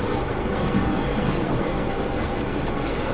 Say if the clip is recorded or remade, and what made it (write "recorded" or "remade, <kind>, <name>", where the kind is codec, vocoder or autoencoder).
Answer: remade, codec, SNAC